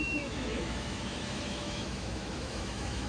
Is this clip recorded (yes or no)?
no